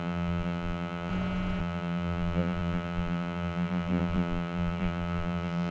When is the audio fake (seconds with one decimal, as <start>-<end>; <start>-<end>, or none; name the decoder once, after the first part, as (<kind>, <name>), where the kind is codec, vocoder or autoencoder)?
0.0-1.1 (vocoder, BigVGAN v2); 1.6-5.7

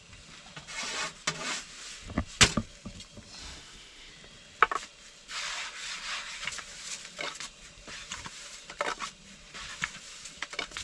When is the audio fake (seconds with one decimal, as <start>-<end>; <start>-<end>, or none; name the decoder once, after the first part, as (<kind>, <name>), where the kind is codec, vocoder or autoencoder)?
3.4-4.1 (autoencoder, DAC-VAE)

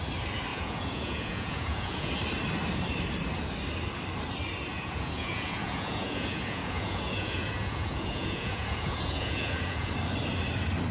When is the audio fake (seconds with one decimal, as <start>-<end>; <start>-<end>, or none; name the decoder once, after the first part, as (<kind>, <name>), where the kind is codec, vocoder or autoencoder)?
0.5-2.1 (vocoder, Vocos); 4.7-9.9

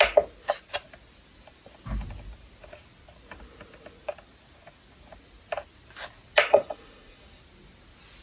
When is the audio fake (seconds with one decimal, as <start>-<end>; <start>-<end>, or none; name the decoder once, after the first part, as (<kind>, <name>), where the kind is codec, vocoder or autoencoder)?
6.5-7.4 (vocoder, Vocos)

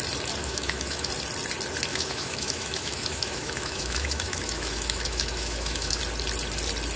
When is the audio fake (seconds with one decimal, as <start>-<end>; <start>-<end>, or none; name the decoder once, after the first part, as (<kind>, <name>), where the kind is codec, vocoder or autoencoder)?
0.4-1.1 (autoencoder, DAC-VAE); 1.9-6.0

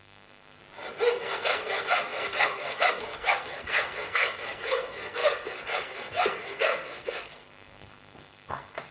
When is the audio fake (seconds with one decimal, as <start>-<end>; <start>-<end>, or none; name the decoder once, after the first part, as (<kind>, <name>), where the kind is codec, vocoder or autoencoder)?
0.0-0.6 (codec, SNAC); 1.1-8.9